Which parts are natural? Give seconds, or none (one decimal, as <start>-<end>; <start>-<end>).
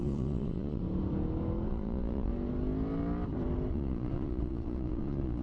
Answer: 0.8-1.7; 2.3-3.7